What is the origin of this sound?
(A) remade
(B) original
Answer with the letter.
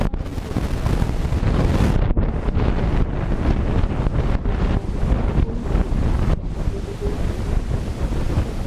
B